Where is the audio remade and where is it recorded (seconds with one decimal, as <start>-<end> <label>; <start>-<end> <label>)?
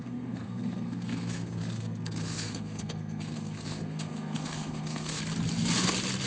0.0-5.2 remade; 5.2-6.3 recorded